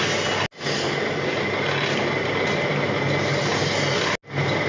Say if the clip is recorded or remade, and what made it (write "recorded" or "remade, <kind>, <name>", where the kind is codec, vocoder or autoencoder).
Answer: recorded